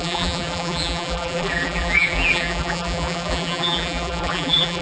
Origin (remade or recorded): remade